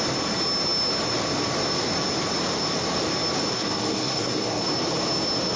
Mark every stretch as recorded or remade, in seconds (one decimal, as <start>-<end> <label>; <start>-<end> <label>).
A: 0.0-3.5 recorded; 3.5-4.6 remade; 4.6-5.6 recorded